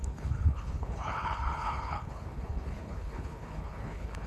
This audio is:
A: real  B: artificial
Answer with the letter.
B